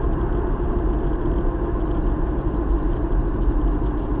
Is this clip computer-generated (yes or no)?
no